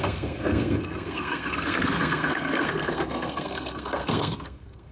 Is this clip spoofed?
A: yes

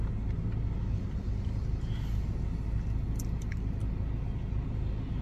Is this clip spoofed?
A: no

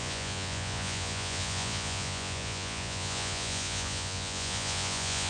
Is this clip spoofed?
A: yes